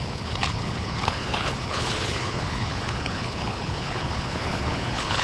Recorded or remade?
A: remade